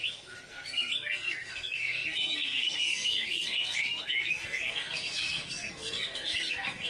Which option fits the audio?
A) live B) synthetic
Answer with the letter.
B